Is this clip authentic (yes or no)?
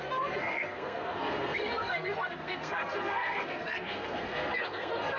no